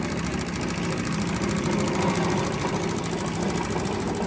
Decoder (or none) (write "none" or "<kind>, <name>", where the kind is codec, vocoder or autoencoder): none